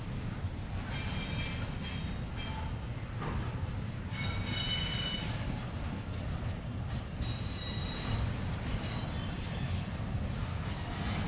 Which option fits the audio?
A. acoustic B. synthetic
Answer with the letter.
A